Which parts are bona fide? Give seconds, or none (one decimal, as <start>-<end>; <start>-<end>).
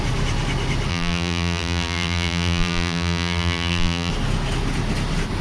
0.0-0.9; 4.1-5.4